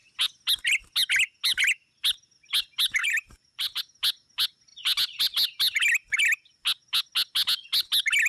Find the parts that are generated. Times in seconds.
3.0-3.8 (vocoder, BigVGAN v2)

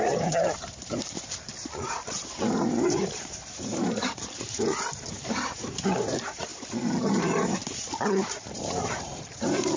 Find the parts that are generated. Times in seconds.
0.0-6.5 (vocoder, BigVGAN v2); 7.0-9.8

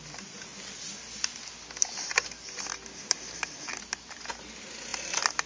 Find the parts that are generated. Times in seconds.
none

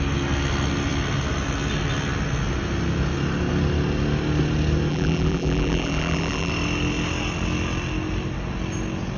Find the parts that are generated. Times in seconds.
4.9-6.5 (vocoder, BigVGAN v2)